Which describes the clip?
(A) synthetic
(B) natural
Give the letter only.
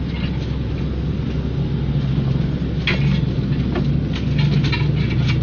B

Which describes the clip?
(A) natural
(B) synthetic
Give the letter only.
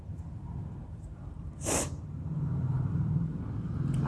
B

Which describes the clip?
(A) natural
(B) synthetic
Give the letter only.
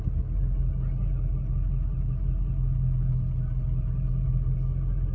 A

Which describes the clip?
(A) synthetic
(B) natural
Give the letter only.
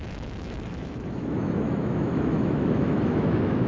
A